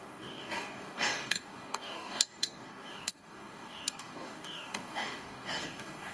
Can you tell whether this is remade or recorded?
remade